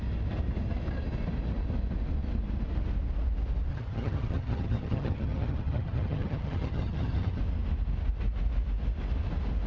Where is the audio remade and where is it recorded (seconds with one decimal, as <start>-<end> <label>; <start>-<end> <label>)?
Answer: 0.0-3.7 recorded; 3.7-7.4 remade; 7.4-9.7 recorded